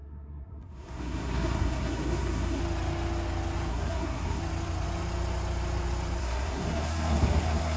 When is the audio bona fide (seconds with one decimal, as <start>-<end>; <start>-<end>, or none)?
2.6-3.7; 4.4-6.2